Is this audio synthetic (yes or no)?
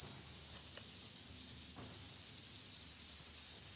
no